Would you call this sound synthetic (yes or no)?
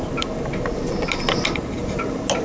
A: no